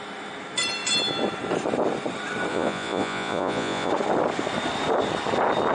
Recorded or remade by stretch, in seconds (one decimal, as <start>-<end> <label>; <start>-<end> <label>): 0.0-2.5 recorded; 2.5-3.9 remade; 3.9-5.7 recorded